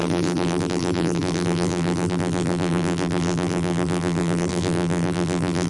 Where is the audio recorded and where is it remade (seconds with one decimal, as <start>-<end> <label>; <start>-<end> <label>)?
0.0-5.7 remade